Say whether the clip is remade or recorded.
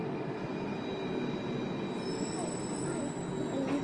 recorded